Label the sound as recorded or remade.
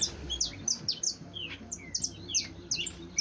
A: recorded